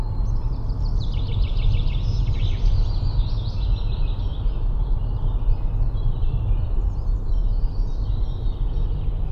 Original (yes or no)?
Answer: yes